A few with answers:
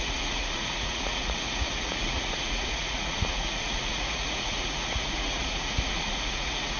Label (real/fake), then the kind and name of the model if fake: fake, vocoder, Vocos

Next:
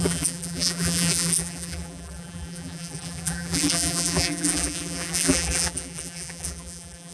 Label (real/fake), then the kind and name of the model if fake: fake, vocoder, BigVGAN v2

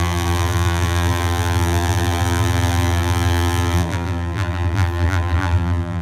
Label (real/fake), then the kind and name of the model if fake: fake, vocoder, BigVGAN v2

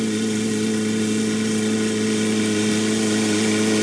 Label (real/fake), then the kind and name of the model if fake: real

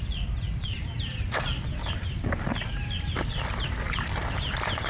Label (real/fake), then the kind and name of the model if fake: fake, vocoder, BigVGAN v2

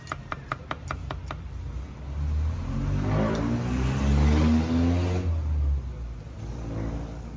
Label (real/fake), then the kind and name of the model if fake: real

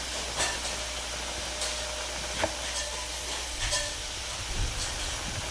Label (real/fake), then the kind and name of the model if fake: real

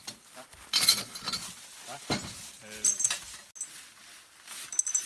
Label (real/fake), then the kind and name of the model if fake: real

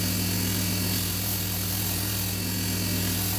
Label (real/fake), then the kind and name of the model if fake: real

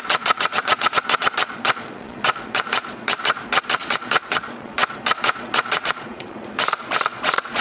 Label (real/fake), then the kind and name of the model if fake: fake, vocoder, Vocos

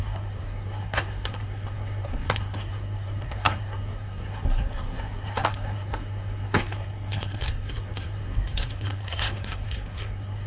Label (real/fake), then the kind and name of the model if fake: fake, codec, SNAC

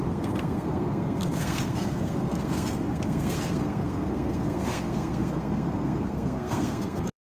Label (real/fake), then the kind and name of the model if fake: fake, codec, SNAC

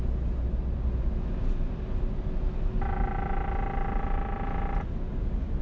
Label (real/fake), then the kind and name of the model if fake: real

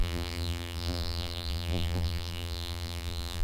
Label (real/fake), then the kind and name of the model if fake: fake, vocoder, BigVGAN v2